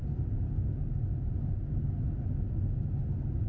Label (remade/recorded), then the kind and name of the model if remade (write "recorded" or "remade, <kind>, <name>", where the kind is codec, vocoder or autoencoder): recorded